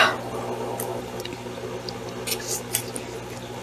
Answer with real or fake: real